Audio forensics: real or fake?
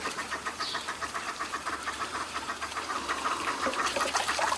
fake